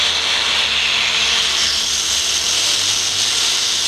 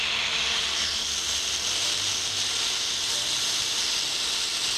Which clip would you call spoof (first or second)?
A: second